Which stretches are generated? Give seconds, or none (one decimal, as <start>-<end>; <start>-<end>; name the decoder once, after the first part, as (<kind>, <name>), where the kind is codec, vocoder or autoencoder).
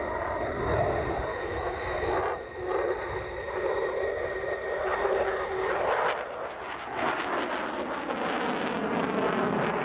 1.3-2.2 (autoencoder, DAC-VAE)